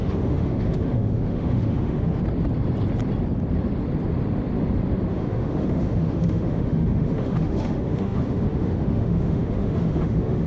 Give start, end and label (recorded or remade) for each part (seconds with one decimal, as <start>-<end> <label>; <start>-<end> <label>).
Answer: 0.0-2.2 remade; 2.2-5.1 recorded; 5.1-10.5 remade